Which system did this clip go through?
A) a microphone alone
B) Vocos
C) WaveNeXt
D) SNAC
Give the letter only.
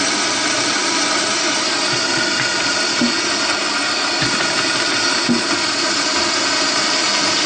A